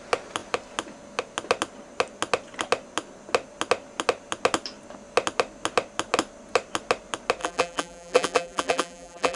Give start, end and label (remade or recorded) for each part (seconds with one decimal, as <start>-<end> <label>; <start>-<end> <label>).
0.0-7.4 recorded; 7.4-9.4 remade

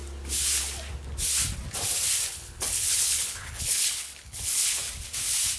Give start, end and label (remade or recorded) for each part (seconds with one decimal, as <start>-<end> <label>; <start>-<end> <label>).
0.0-2.3 recorded; 2.3-4.8 remade; 4.8-5.6 recorded

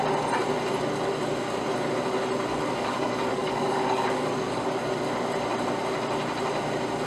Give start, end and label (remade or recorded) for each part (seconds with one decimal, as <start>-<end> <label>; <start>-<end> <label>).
0.0-2.5 recorded; 2.5-4.9 remade; 4.9-7.1 recorded

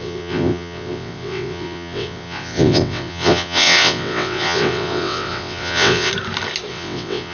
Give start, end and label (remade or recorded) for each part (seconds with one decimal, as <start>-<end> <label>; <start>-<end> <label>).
0.0-6.1 remade; 6.1-6.7 recorded; 6.7-7.3 remade

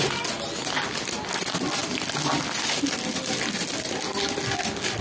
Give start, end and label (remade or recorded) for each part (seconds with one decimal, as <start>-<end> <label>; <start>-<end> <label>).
0.0-5.0 recorded

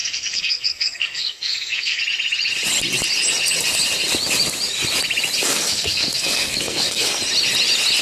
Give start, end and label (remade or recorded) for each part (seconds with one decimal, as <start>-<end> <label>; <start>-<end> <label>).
0.0-2.0 remade; 2.0-5.5 recorded; 5.5-7.2 remade; 7.2-8.0 recorded